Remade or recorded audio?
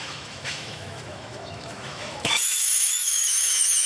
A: remade